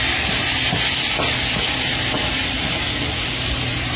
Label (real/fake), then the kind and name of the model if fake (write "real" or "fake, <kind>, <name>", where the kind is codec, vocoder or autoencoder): real